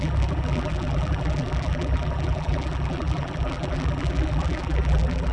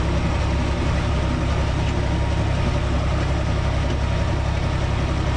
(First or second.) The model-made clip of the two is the first